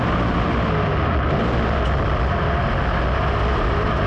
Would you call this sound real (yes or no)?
yes